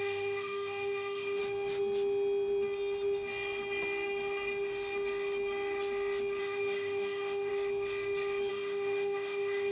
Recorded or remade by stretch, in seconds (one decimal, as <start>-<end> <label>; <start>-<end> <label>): 0.0-1.4 remade; 1.4-6.4 recorded; 6.4-7.5 remade; 7.5-8.5 recorded; 8.5-9.7 remade